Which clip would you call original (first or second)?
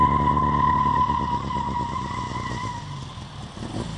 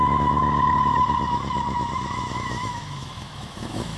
first